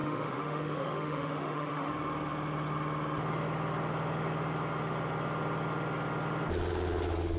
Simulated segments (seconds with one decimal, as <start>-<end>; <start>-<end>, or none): 0.0-1.9